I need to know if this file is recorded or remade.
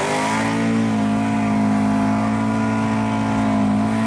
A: recorded